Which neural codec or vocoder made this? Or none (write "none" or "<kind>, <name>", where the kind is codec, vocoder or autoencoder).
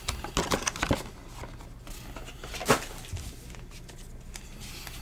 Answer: none